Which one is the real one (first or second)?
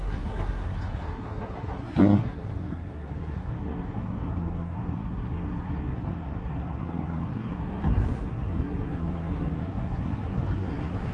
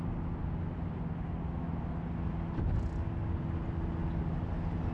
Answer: second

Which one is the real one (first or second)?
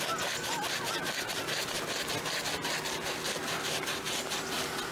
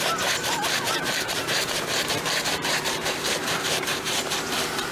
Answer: first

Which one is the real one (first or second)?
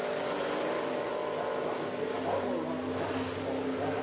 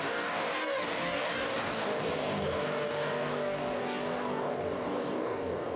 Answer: first